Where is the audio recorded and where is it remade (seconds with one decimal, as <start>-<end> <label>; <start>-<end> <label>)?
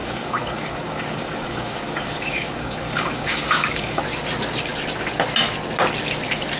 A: 0.0-4.0 remade; 4.0-6.6 recorded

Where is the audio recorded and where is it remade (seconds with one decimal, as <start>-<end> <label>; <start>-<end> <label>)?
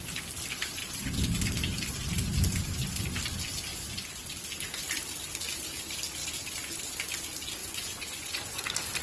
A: 0.0-3.7 recorded; 3.7-4.2 remade; 4.2-7.6 recorded; 7.6-8.6 remade; 8.6-9.0 recorded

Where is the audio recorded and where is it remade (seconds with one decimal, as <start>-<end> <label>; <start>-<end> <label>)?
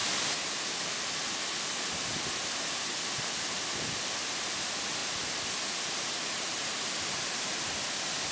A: 0.0-8.3 recorded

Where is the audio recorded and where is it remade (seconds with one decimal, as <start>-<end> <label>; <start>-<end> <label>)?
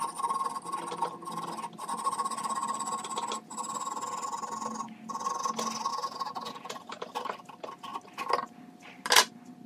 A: 0.0-5.9 recorded; 5.9-7.1 remade; 7.1-9.7 recorded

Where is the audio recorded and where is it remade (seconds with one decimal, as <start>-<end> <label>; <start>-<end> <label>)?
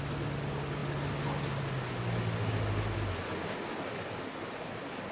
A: 0.0-5.1 recorded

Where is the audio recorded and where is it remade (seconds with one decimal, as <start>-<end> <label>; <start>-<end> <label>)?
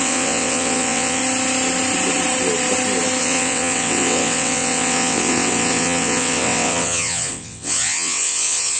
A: 0.0-1.2 remade; 1.2-3.2 recorded; 3.2-8.8 remade